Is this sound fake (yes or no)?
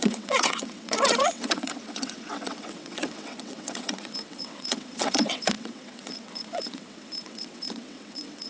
yes